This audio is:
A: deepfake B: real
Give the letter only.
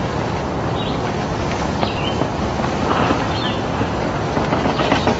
B